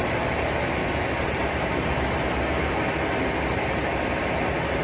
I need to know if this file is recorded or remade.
remade